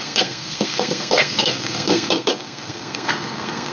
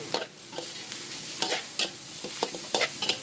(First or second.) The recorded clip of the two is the second